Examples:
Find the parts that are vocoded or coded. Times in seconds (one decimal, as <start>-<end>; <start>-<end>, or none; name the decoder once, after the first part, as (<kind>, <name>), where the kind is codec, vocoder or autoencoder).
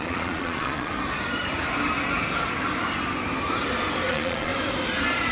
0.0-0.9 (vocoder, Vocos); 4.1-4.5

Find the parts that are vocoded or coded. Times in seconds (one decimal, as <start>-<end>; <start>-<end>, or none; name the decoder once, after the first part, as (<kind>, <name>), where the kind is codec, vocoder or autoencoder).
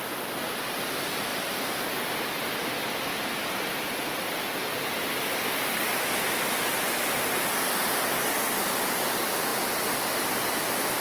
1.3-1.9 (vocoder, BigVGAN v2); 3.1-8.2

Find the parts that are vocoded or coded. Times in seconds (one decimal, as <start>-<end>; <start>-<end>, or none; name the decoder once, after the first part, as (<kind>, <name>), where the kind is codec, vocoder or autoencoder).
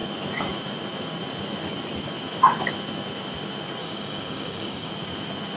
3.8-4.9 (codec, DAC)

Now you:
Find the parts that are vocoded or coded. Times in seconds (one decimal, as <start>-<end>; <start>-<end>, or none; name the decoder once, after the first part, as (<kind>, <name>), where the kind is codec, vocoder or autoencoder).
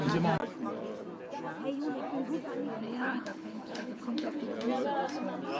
2.8-4.4 (codec, HILCodec)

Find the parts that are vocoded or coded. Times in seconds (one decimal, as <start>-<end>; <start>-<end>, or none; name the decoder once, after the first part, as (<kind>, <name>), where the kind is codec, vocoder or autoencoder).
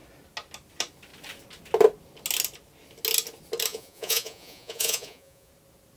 3.7-5.5 (vocoder, Vocos)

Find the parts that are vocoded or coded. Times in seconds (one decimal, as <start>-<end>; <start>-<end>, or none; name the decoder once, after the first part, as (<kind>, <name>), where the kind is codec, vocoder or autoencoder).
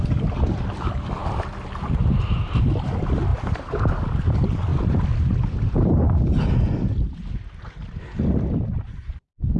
none